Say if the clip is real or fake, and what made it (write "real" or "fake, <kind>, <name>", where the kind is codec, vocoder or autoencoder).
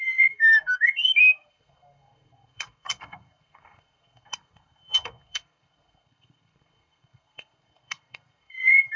fake, codec, SNAC